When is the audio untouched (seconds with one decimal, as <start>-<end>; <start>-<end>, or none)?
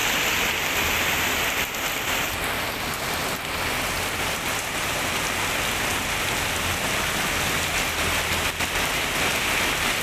0.0-10.0